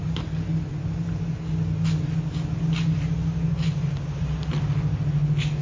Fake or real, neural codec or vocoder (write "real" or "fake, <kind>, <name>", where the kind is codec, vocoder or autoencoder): real